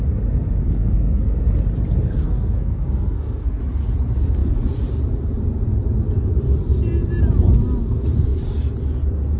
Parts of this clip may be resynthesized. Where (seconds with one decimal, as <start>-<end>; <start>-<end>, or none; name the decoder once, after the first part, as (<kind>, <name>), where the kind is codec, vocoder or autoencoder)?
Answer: 0.6-1.3 (codec, SNAC); 2.2-3.6